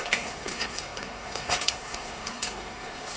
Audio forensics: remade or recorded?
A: remade